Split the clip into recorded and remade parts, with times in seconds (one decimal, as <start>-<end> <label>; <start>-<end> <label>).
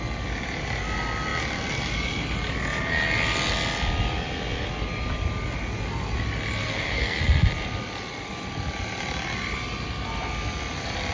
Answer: 0.0-6.6 recorded; 6.6-7.2 remade; 7.2-11.1 recorded